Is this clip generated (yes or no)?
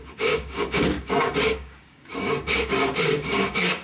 yes